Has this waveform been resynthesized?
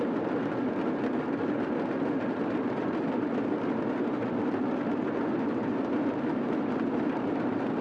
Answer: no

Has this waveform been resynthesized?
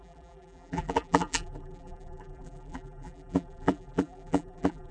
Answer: yes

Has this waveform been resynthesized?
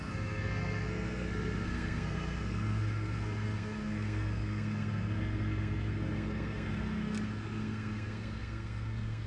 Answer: yes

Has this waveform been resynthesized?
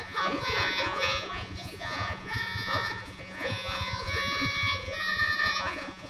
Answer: yes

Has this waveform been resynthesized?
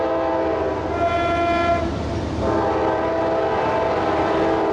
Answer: no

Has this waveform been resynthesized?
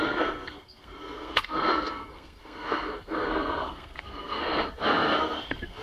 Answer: yes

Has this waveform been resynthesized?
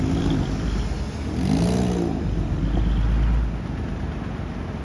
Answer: no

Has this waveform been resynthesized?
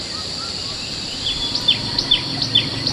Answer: no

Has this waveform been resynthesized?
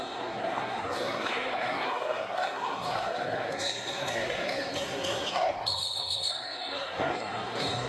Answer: yes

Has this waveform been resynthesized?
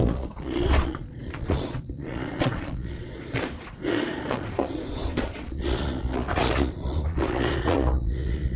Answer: yes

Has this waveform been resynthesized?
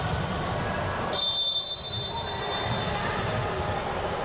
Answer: no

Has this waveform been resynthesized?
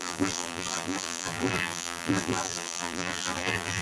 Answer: yes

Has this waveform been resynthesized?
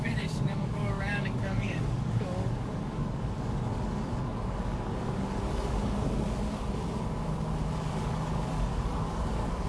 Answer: yes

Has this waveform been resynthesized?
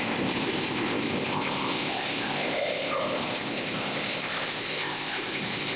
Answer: yes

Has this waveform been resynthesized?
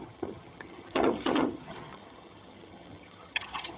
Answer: yes